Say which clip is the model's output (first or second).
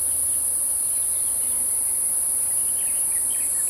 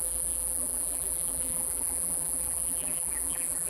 second